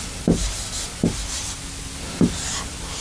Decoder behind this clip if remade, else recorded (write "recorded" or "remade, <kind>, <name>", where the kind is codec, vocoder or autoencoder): recorded